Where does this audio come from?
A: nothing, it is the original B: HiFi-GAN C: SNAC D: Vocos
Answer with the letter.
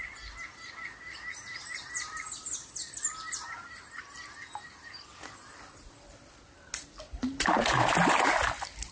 A